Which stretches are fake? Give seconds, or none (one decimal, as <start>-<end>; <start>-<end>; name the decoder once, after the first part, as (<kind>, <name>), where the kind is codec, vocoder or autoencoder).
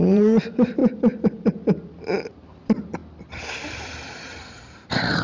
0.0-0.8 (vocoder, BigVGAN v2); 2.0-3.0; 4.7-5.2